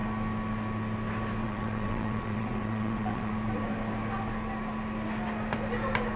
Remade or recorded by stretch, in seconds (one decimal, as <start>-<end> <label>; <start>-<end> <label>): 0.0-1.4 recorded; 1.4-3.3 remade; 3.3-6.2 recorded